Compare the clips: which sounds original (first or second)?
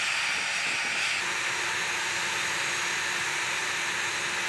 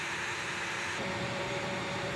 first